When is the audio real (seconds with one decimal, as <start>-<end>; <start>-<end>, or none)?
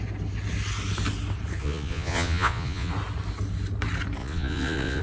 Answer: 0.0-1.6; 2.9-4.2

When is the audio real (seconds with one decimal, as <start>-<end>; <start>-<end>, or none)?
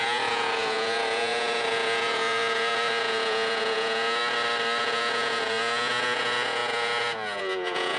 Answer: 4.2-4.8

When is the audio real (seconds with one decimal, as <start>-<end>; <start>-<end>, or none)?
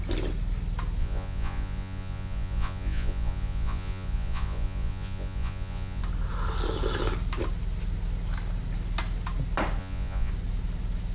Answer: 0.0-1.0; 6.0-9.8; 10.3-11.1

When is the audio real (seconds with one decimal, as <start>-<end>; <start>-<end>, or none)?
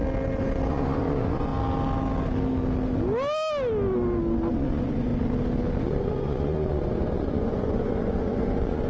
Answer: 0.0-0.7; 1.5-4.5; 5.1-5.8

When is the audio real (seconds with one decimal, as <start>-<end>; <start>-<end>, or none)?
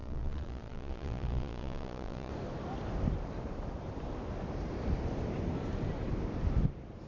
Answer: 2.3-7.1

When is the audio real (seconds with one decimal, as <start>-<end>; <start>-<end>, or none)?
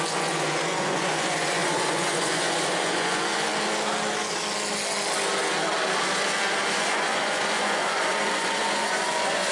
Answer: 3.5-6.7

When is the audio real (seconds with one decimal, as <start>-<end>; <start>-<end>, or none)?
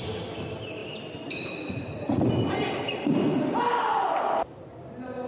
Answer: 0.0-5.3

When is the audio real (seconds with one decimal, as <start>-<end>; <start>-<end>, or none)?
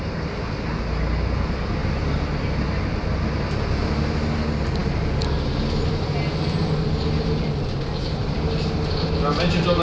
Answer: 0.0-9.8